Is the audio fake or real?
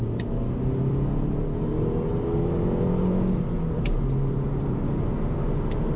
real